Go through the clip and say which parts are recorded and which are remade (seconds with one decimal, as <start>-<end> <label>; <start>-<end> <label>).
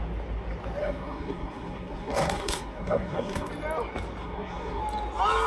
0.0-0.8 recorded; 0.8-3.5 remade; 3.5-4.2 recorded; 4.2-4.8 remade; 4.8-5.5 recorded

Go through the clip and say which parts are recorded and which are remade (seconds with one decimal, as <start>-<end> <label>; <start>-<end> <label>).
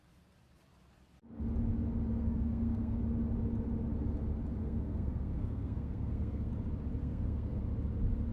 0.0-2.1 recorded; 2.1-3.0 remade; 3.0-4.6 recorded; 4.6-6.5 remade; 6.5-7.0 recorded; 7.0-7.6 remade; 7.6-8.3 recorded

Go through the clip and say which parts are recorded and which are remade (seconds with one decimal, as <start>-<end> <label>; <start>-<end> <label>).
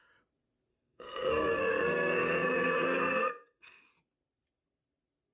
0.0-0.7 recorded; 0.7-3.9 remade; 3.9-5.3 recorded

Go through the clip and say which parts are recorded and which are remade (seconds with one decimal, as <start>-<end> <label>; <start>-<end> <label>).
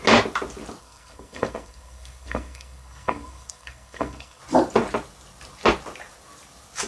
0.0-0.8 recorded; 0.8-4.4 remade; 4.4-6.9 recorded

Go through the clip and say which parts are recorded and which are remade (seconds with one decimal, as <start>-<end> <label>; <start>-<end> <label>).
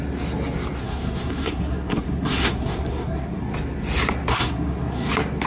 0.0-0.8 recorded; 0.8-3.4 remade; 3.4-4.3 recorded; 4.3-5.1 remade; 5.1-5.5 recorded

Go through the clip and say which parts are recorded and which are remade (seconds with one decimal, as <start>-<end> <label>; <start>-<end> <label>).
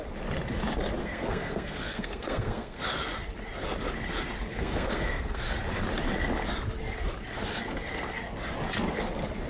0.0-1.0 recorded; 1.0-2.8 remade; 2.8-4.5 recorded; 4.5-5.4 remade; 5.4-9.5 recorded